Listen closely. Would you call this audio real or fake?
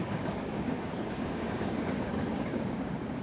fake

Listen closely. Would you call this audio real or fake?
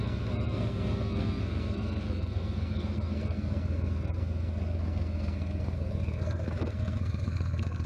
fake